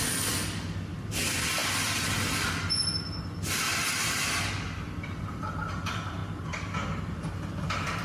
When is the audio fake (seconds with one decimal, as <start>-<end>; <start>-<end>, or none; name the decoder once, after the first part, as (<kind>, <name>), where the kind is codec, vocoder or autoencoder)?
0.0-6.2 (vocoder, BigVGAN v2); 7.0-8.0